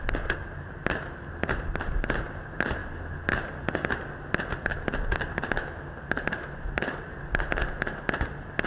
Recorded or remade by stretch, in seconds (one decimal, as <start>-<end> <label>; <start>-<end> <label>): 0.0-8.7 recorded